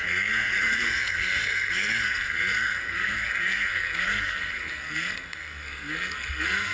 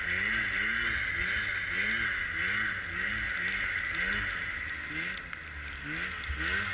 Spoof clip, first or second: first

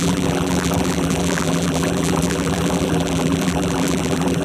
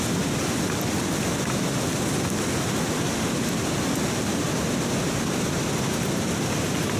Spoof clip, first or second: first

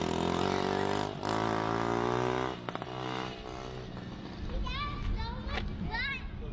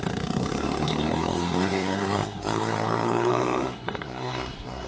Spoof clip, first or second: second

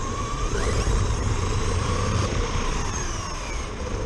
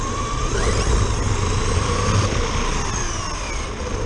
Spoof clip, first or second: first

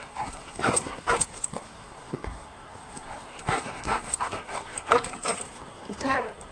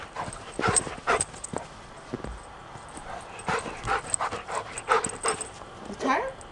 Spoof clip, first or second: first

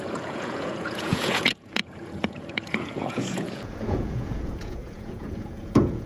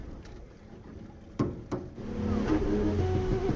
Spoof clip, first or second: first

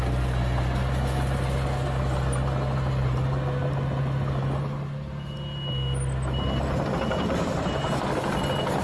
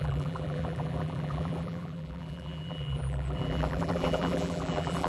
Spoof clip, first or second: second